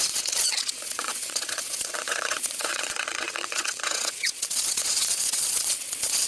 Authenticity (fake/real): fake